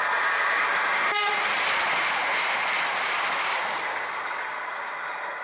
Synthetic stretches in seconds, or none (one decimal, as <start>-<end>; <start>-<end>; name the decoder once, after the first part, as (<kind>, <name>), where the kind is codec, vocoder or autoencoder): none